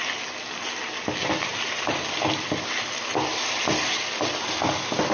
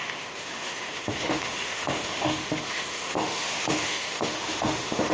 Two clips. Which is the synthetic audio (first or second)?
second